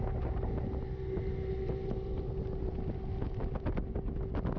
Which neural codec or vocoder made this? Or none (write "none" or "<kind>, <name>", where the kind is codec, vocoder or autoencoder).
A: none